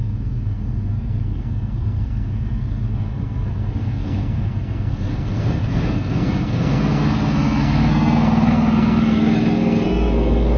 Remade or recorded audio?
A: remade